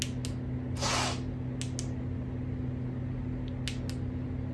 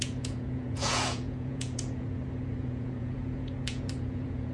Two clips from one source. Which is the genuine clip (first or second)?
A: first